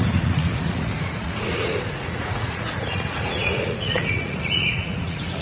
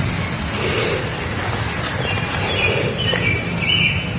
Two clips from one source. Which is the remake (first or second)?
first